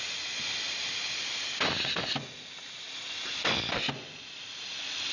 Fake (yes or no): no